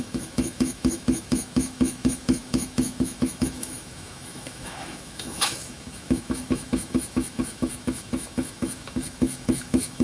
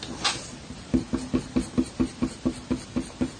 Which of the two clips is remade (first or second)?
first